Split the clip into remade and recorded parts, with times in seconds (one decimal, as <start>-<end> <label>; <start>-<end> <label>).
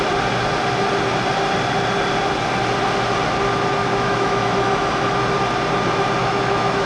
0.0-3.8 recorded; 3.8-5.2 remade; 5.2-6.2 recorded; 6.2-6.9 remade